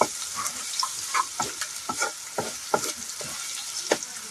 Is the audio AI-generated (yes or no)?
no